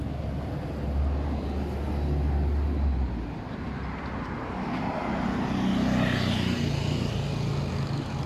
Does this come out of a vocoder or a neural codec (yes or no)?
no